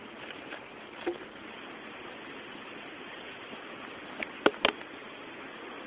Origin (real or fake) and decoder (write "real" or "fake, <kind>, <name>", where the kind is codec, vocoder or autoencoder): fake, vocoder, BigVGAN v2